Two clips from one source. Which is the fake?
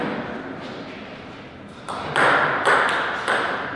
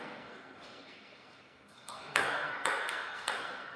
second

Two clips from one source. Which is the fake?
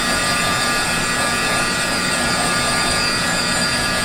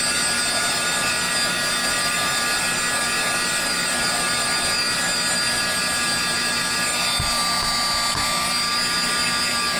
first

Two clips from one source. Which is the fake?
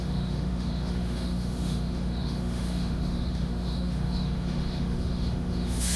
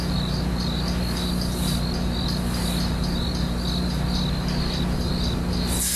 first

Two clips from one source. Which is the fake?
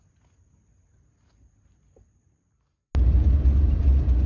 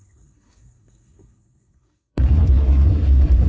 second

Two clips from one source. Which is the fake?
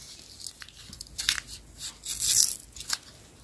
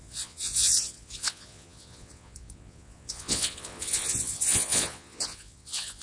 second